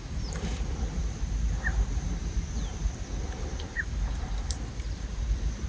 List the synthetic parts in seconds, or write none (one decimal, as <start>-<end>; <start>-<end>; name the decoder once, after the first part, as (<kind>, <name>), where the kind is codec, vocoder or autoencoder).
none